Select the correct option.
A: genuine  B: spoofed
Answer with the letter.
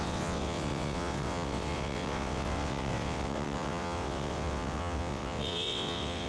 B